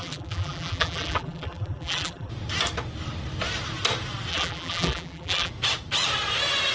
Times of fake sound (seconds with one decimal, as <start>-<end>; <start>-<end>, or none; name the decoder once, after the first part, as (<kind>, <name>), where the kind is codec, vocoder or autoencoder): 0.0-2.3 (vocoder, BigVGAN v2); 4.3-5.5